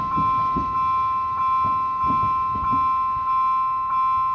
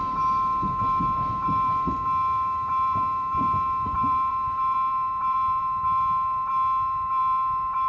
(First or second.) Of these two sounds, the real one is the first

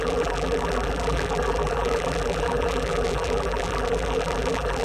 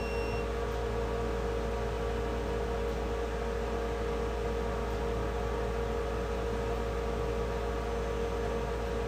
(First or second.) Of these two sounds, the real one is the second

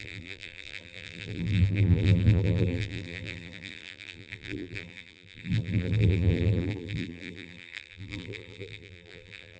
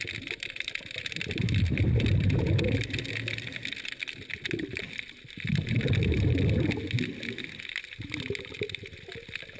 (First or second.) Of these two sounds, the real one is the second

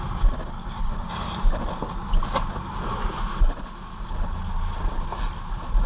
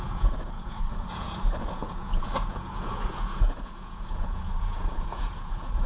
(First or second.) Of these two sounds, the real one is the first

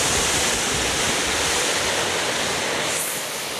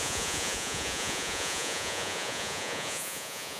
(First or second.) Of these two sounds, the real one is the first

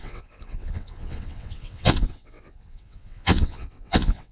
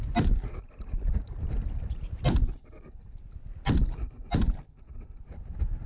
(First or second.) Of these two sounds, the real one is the second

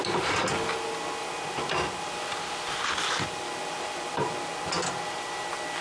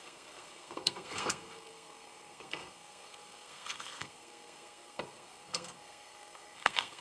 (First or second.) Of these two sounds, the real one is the first